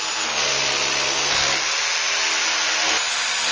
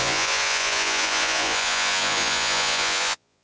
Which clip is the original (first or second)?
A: first